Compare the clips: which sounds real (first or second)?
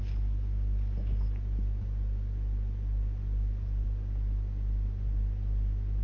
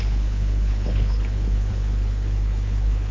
first